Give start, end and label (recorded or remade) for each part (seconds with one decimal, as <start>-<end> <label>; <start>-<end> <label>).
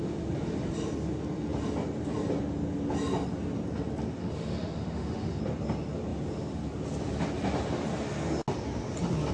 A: 0.0-4.2 recorded; 4.2-5.4 remade; 5.4-9.3 recorded